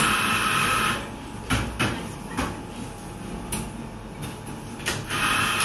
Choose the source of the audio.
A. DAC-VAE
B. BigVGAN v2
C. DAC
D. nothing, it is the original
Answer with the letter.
D